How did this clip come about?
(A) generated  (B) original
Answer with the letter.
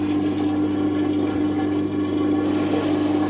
B